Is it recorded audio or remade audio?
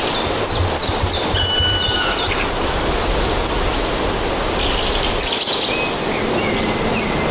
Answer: recorded